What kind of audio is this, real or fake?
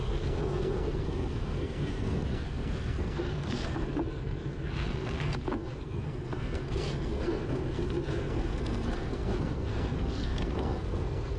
fake